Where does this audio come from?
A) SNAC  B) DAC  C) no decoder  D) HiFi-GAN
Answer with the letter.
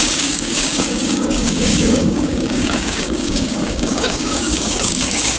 B